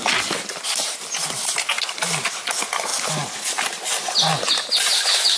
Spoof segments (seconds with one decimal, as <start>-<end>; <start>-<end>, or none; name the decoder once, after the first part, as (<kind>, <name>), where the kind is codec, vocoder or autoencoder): none